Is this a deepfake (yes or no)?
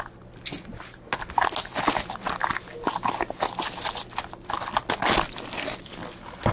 no